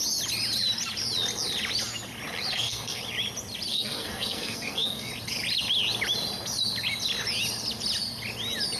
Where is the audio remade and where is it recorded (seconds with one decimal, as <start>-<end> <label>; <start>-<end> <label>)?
0.0-2.5 recorded; 2.5-3.0 remade; 3.0-3.7 recorded; 3.7-5.1 remade; 5.1-8.8 recorded